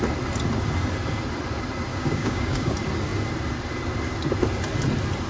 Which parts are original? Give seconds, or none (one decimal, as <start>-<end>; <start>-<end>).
0.0-1.9; 2.7-5.3